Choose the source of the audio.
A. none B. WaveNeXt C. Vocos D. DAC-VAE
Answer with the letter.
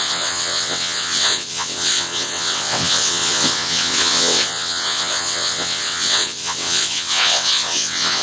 B